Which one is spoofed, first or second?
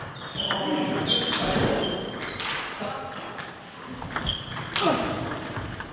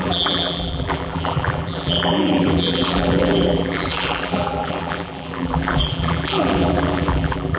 second